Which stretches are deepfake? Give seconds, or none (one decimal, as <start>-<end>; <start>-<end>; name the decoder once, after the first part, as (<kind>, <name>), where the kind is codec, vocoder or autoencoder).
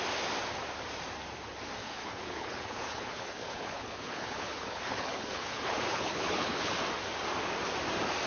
1.8-6.7 (codec, HILCodec)